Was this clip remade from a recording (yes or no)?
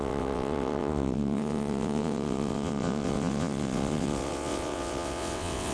yes